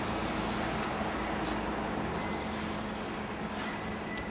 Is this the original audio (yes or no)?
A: yes